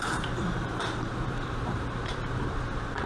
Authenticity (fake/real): fake